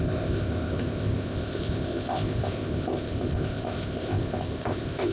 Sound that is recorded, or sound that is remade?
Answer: remade